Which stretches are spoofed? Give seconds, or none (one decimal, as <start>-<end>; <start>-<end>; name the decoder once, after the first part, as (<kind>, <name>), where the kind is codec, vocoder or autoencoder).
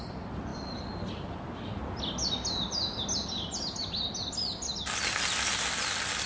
none